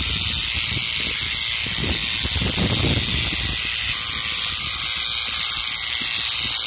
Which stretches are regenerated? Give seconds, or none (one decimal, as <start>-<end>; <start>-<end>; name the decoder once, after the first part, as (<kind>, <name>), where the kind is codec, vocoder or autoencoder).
none